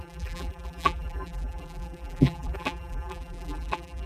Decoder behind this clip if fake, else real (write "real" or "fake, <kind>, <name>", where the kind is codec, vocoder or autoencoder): fake, vocoder, BigVGAN v2